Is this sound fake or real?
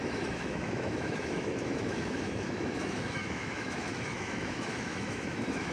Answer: fake